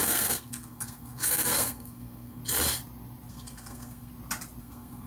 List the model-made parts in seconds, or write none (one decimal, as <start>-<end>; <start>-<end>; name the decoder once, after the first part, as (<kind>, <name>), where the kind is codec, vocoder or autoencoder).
0.0-2.4 (codec, SNAC); 3.3-4.1; 4.6-5.1

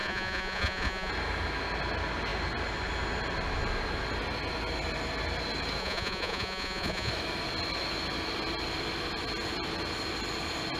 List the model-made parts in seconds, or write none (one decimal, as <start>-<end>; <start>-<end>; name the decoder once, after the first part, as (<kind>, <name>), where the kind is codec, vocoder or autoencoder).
0.0-1.1 (vocoder, Vocos); 5.8-7.1

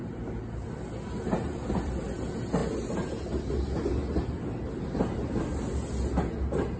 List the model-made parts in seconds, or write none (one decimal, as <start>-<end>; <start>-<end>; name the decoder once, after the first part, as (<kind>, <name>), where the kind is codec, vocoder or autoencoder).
none